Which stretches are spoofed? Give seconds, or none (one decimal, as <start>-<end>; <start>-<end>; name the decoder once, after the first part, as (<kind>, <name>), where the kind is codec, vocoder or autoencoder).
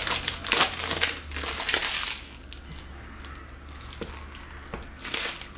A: none